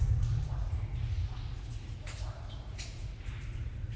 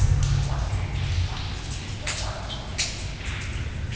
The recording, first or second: second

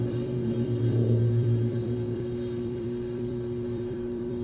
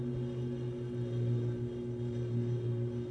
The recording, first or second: second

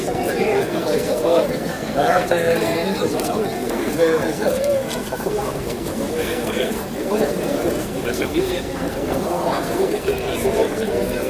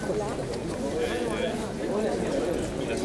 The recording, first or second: second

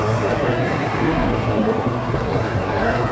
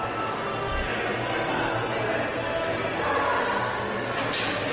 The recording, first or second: second